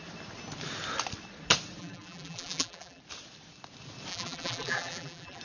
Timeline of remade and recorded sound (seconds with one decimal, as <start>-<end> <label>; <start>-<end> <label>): 0.0-1.8 recorded; 1.8-3.0 remade; 3.0-4.1 recorded; 4.1-5.4 remade